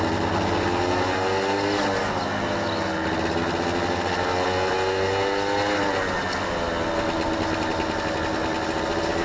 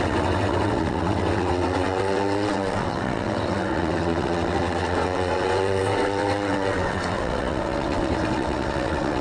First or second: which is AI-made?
second